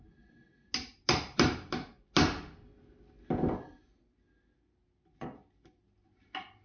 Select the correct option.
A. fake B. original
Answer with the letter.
B